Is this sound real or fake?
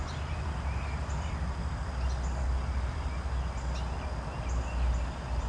real